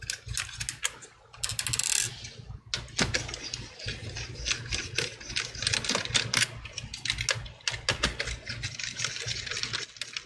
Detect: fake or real real